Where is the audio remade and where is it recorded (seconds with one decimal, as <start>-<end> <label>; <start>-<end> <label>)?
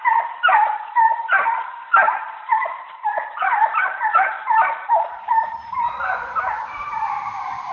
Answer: 0.0-7.7 recorded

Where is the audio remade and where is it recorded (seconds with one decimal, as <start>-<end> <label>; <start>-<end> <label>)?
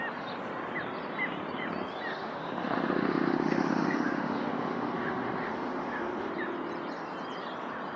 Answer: 0.0-2.1 recorded; 2.1-6.3 remade; 6.3-8.0 recorded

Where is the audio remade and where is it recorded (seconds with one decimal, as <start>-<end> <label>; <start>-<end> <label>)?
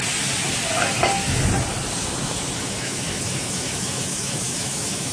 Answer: 0.0-2.0 recorded; 2.0-5.1 remade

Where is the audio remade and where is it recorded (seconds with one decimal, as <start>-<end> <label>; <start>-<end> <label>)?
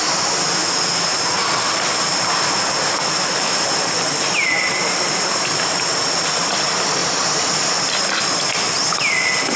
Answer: 0.0-9.6 recorded